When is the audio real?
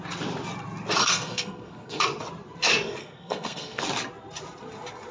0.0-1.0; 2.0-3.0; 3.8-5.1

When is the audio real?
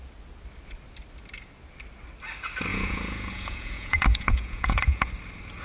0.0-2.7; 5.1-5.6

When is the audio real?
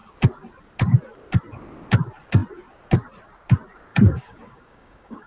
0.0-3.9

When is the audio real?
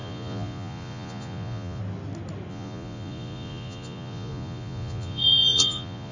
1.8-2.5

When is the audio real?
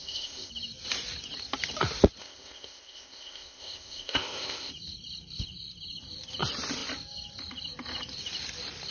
0.5-2.2; 4.7-8.9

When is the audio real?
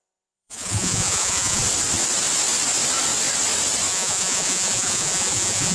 1.6-3.9